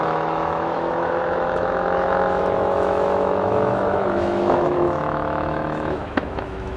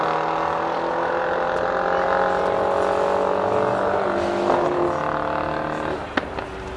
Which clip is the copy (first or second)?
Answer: first